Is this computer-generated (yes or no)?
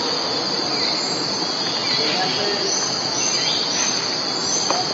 no